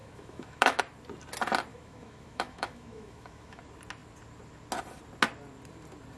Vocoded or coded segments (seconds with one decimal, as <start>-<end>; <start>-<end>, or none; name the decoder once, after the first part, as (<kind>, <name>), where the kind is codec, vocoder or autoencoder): 0.0-0.8 (autoencoder, DAC-VAE); 1.7-3.6